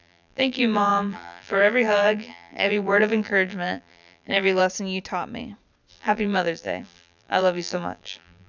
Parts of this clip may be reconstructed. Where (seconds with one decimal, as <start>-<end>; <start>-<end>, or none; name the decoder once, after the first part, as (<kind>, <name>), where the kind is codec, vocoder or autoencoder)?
0.0-4.6 (vocoder, BigVGAN v2); 5.9-8.5